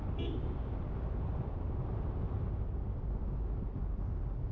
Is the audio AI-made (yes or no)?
no